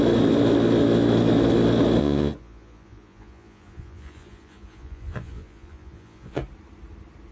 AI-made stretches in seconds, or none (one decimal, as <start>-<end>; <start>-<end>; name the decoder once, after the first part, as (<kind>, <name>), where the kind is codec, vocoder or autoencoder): 2.0-6.4 (vocoder, Vocos)